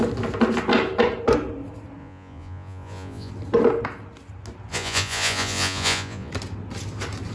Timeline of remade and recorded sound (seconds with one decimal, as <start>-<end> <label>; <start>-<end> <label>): 0.0-2.0 recorded; 2.0-3.3 remade; 3.3-4.7 recorded; 4.7-6.3 remade; 6.3-7.3 recorded